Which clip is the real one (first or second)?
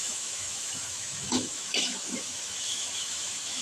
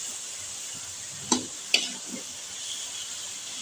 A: second